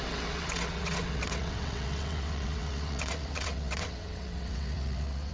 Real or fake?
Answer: fake